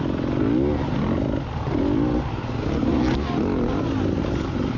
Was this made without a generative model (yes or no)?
yes